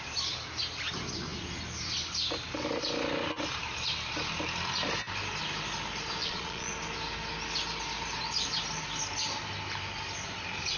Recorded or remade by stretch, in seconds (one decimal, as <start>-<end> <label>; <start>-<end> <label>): 0.0-6.2 recorded; 6.2-6.7 remade; 6.7-10.8 recorded